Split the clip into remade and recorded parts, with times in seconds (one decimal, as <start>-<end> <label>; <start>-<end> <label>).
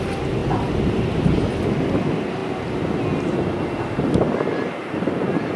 0.0-0.4 recorded; 0.4-1.1 remade; 1.1-5.6 recorded